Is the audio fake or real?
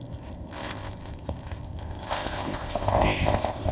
fake